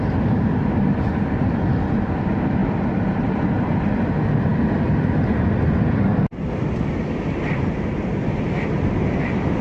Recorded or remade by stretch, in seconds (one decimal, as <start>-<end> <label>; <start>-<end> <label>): 0.0-2.6 recorded; 2.6-3.8 remade; 3.8-9.6 recorded